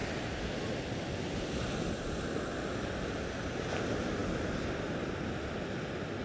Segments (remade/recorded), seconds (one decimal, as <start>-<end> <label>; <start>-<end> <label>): 0.0-6.2 recorded